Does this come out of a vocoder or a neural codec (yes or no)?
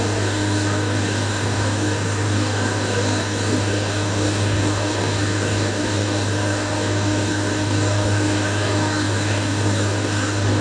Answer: yes